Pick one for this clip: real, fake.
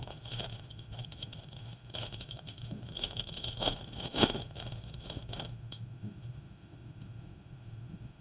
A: fake